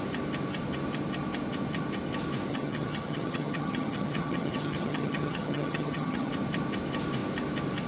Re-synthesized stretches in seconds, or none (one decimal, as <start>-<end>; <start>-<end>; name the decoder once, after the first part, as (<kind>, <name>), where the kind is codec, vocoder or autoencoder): 2.5-6.3 (vocoder, HiFi-GAN)